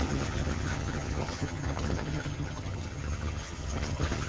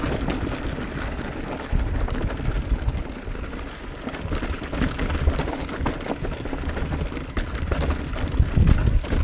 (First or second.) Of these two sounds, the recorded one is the second